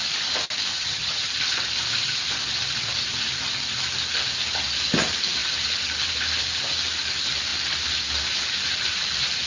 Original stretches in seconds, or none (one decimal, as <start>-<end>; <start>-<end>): 0.0-0.7; 1.3-9.5